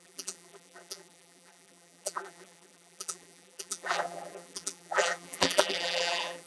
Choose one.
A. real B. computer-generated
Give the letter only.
B